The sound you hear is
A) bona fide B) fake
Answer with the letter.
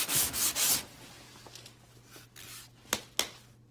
A